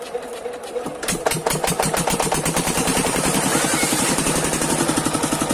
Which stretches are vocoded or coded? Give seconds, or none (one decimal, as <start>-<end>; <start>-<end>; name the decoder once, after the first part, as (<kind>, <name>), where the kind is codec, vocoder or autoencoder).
0.9-4.2 (vocoder, BigVGAN v2)